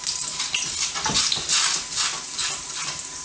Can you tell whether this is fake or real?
real